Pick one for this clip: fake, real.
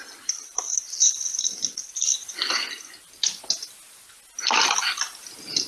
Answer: real